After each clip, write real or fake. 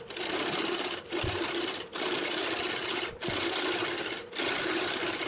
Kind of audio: real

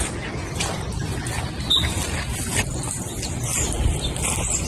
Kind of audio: real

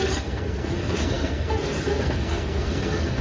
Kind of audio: fake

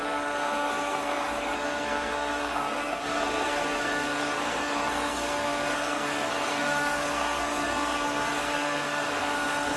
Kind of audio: fake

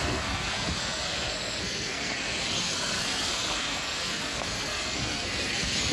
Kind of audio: fake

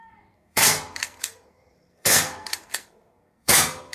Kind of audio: fake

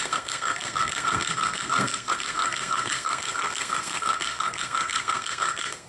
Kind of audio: fake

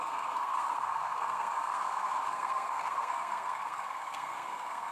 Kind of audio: fake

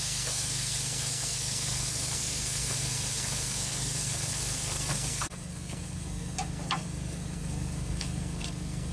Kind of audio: fake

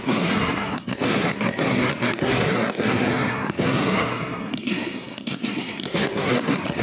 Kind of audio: fake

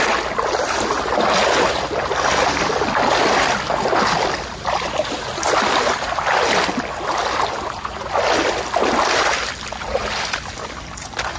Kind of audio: real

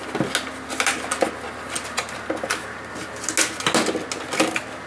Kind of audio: real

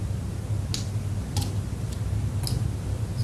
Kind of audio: real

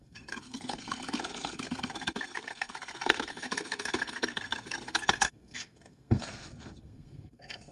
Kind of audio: fake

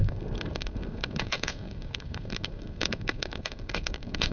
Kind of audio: fake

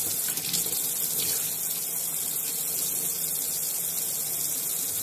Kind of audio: real